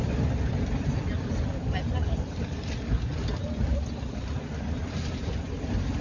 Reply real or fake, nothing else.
real